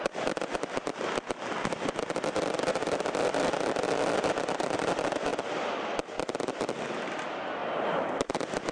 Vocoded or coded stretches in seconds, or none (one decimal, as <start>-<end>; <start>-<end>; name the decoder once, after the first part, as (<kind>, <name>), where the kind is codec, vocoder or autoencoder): 7.6-8.1 (vocoder, BigVGAN v2)